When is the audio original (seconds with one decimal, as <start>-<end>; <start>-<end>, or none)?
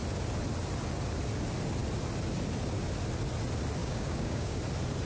0.0-3.8; 4.6-5.1